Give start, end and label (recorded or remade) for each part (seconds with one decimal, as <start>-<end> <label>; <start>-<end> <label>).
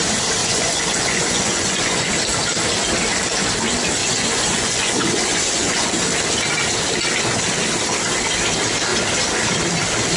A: 0.0-0.4 recorded; 0.4-2.1 remade; 2.1-4.0 recorded; 4.0-5.9 remade; 5.9-10.2 recorded